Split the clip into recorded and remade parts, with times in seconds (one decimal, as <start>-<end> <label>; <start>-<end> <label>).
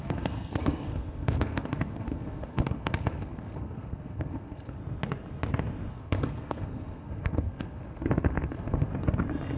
0.0-4.8 remade; 4.8-5.9 recorded; 5.9-8.9 remade; 8.9-9.6 recorded